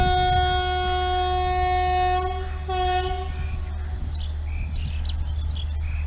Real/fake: real